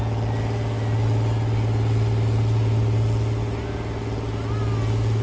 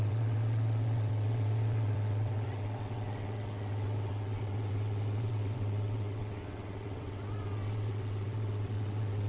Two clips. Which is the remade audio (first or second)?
second